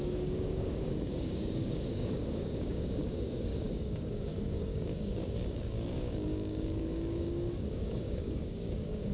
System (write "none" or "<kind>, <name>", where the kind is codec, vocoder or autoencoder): codec, DAC